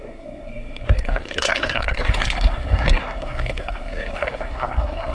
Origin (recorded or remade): remade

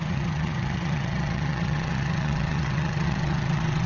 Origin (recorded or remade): remade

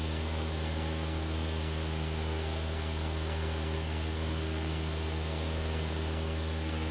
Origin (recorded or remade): remade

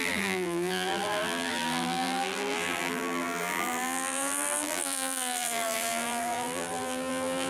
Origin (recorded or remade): remade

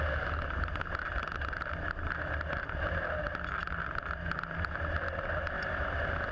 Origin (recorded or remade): recorded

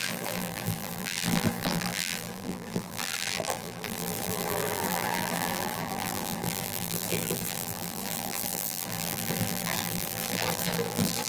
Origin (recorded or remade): remade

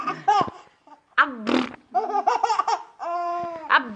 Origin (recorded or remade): remade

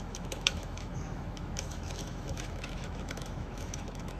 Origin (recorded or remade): remade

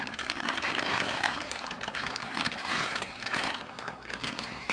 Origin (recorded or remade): remade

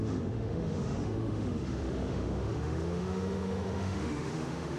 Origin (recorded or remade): remade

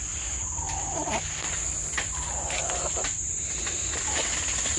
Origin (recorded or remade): recorded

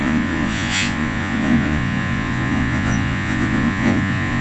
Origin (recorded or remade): remade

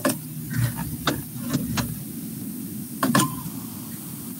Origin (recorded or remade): recorded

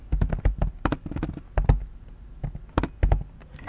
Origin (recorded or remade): recorded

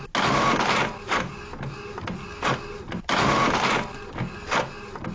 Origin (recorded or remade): recorded